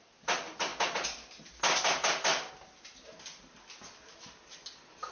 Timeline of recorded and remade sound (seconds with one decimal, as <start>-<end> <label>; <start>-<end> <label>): 0.0-5.1 recorded